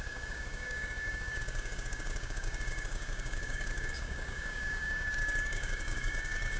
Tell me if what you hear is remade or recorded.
remade